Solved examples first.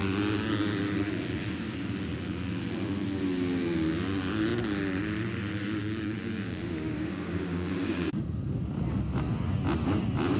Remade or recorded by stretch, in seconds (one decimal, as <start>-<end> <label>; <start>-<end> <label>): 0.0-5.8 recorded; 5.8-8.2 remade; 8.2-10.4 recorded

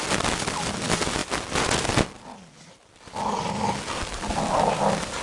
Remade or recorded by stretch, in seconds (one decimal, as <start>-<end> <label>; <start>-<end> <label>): 0.0-5.2 recorded

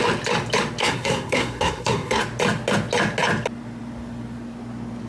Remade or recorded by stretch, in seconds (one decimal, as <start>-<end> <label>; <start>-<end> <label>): 0.0-0.8 recorded; 0.8-2.2 remade; 2.2-5.1 recorded